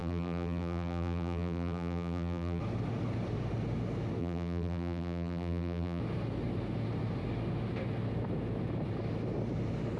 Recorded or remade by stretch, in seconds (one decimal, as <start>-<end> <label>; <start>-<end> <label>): 0.0-2.6 remade; 2.6-4.2 recorded; 4.2-6.0 remade; 6.0-10.0 recorded